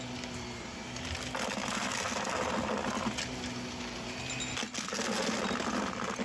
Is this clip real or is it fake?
real